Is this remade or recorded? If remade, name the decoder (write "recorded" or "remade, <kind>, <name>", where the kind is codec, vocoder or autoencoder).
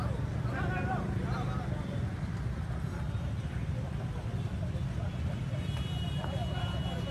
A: recorded